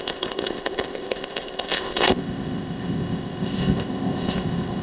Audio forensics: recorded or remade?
remade